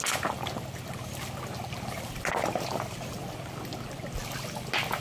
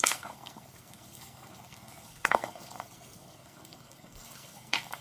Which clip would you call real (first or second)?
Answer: first